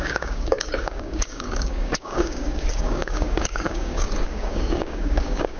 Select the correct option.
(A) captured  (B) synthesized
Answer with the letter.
B